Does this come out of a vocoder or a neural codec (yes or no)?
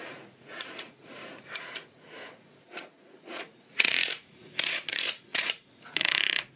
yes